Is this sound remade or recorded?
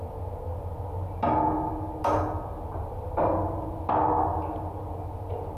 recorded